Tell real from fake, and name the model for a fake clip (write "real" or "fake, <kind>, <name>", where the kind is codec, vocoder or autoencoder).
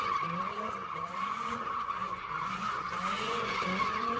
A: fake, vocoder, Vocos